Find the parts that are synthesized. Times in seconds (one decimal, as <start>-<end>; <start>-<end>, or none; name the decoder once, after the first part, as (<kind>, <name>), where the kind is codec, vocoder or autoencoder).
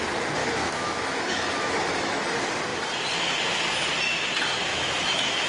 0.4-2.2 (autoencoder, DAC-VAE); 4.7-5.5